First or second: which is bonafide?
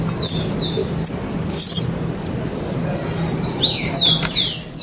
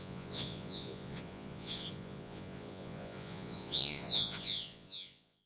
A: first